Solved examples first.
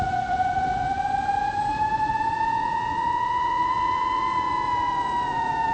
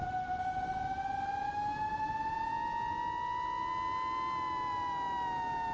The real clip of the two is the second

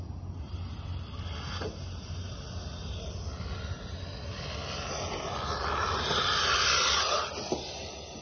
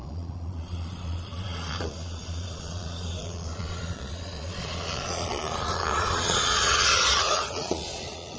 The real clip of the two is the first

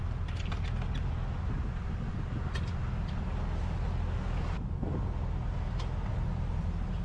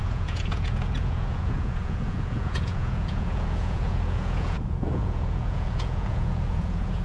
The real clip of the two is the first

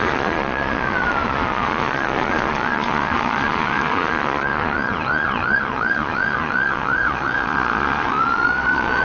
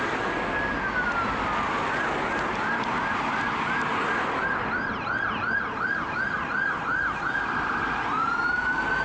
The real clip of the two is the second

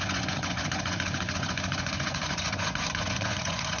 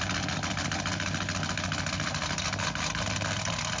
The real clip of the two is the second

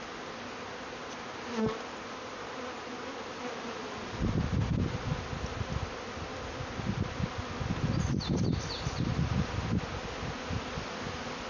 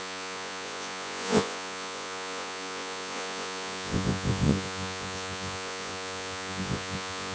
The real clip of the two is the first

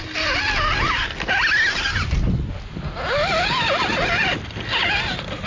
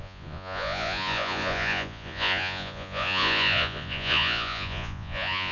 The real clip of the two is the first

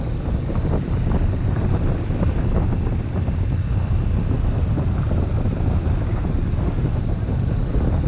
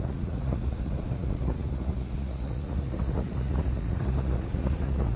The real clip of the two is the first